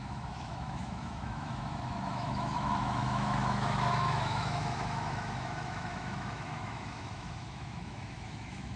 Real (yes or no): no